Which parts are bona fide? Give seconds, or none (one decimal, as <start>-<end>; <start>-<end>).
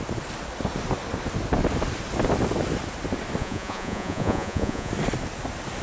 0.0-3.4; 4.9-5.8